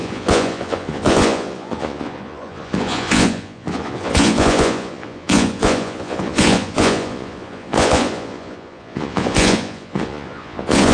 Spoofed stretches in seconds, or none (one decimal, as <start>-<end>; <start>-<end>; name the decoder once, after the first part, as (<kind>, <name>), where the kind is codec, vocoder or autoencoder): 0.0-10.9 (vocoder, Vocos)